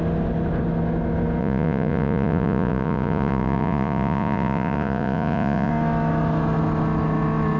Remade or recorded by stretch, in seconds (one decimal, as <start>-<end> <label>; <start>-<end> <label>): 0.0-1.4 recorded; 1.4-5.7 remade; 5.7-7.6 recorded